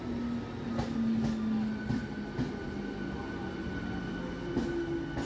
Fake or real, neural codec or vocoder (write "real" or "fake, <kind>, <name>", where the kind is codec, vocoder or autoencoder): real